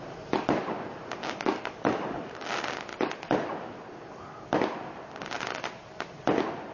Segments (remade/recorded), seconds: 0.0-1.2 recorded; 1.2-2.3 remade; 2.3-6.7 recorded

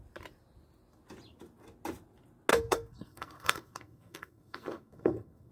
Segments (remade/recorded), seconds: 0.0-2.5 recorded; 2.5-5.5 remade

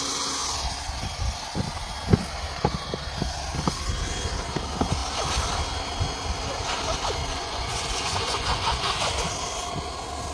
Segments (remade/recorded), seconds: 0.0-7.2 recorded; 7.2-8.9 remade; 8.9-10.3 recorded

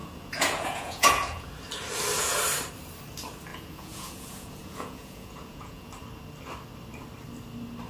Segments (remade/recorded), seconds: 0.0-1.5 remade; 1.5-3.5 recorded; 3.5-5.9 remade; 5.9-7.9 recorded

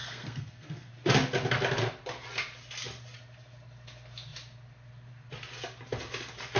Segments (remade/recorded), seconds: 0.0-0.9 remade; 0.9-6.6 recorded

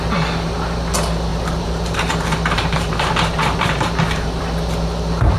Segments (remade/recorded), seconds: 0.0-1.3 recorded; 1.3-4.4 remade; 4.4-5.4 recorded